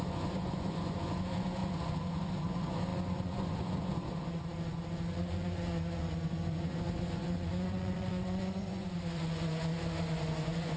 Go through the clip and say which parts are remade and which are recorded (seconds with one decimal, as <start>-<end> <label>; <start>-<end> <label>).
0.0-10.8 remade